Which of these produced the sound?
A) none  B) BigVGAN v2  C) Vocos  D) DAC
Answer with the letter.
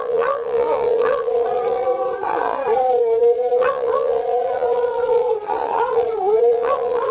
C